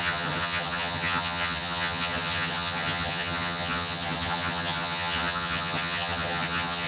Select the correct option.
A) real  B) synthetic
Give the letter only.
B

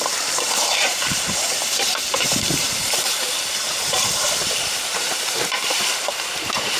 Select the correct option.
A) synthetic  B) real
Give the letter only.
A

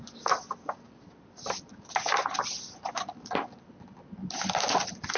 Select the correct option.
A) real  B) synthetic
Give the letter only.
A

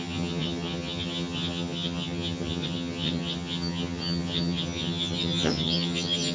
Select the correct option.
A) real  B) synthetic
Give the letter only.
B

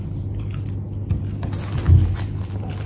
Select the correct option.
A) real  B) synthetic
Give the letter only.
A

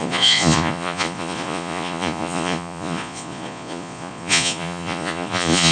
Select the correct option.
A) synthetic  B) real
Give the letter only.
A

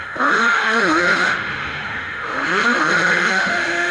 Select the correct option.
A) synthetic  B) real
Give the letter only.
A